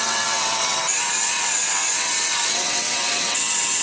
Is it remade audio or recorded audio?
remade